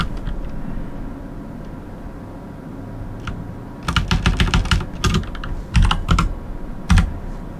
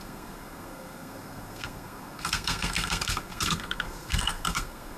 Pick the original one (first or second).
first